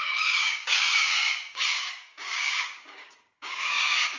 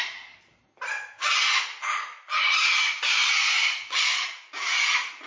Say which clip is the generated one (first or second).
first